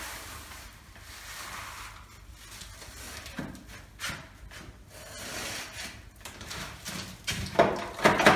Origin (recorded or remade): recorded